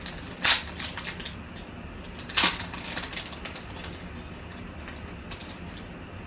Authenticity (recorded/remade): recorded